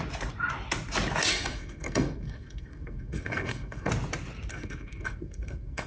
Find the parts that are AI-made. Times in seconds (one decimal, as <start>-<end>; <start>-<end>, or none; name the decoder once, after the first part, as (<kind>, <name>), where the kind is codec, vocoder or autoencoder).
1.3-3.9 (codec, SNAC); 4.5-5.9